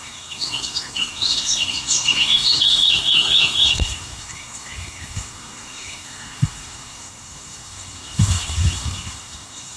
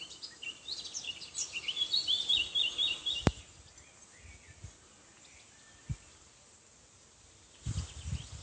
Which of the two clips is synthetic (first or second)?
first